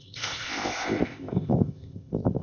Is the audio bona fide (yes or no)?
no